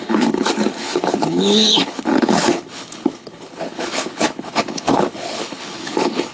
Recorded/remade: remade